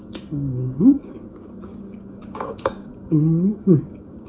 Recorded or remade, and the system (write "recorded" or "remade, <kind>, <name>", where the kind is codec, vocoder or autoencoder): remade, codec, DAC